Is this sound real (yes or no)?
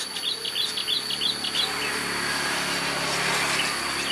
yes